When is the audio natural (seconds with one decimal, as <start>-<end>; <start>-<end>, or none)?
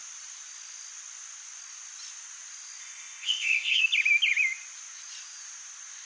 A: 0.0-2.8; 3.8-6.1